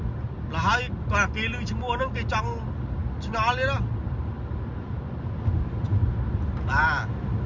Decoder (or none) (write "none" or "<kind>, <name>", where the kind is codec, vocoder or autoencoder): none